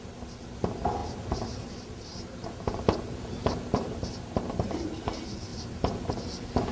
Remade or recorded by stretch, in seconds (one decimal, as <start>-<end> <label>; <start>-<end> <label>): 0.0-1.0 recorded; 1.0-5.0 remade; 5.0-5.5 recorded; 5.5-6.1 remade; 6.1-6.7 recorded